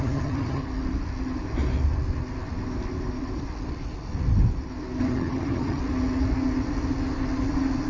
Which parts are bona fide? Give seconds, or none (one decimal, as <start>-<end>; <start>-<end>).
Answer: 0.6-5.0; 5.8-7.9